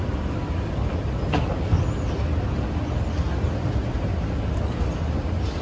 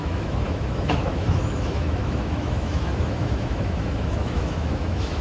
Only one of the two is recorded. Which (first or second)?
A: first